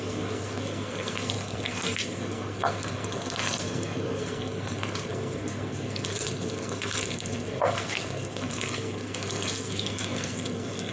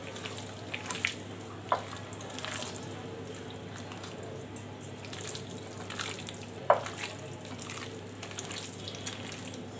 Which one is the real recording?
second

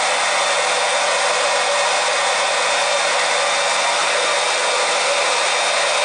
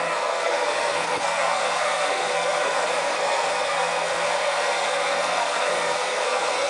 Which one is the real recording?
first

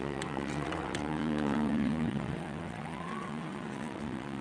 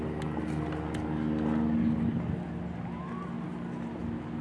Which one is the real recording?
second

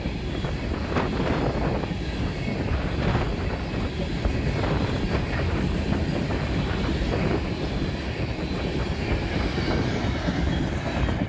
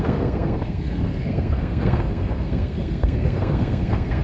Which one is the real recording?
first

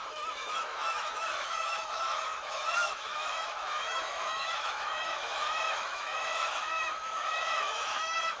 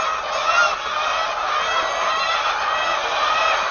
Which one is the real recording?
second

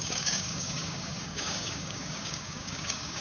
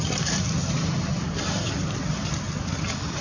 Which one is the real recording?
second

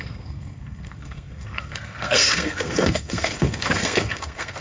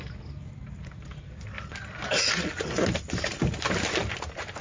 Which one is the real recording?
second